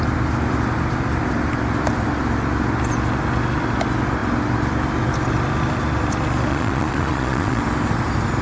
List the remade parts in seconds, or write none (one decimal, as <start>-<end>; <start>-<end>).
6.5-7.6